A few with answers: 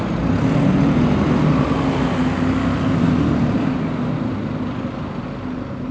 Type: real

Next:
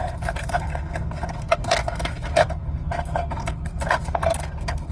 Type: fake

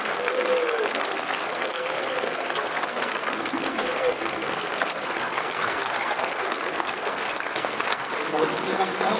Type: fake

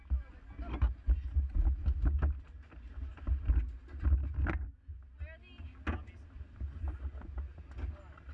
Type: real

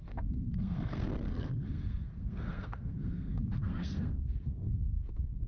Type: fake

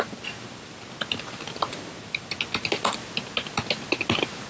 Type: real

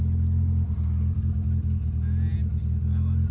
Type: real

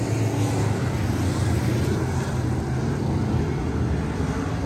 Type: real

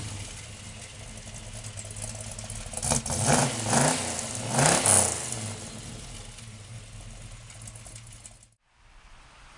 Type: real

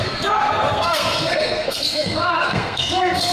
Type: fake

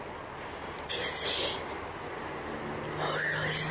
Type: real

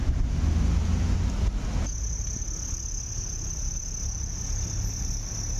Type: real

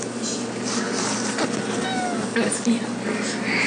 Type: real